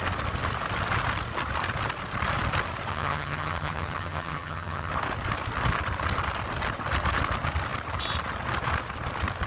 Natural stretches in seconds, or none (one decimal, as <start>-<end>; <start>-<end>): 0.0-2.9; 4.9-9.5